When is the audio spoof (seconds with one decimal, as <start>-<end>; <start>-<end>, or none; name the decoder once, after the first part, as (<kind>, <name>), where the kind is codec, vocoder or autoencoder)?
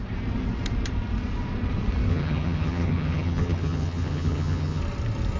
2.1-4.8 (vocoder, HiFi-GAN)